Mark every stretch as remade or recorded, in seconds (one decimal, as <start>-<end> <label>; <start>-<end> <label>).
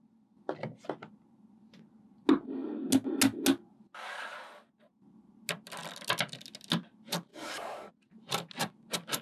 0.0-7.3 recorded; 7.3-7.9 remade; 7.9-9.2 recorded